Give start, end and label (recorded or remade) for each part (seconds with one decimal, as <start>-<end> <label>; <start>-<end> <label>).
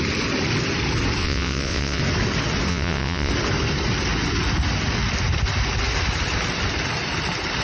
0.0-1.2 recorded; 1.2-2.0 remade; 2.0-2.7 recorded; 2.7-3.3 remade; 3.3-7.6 recorded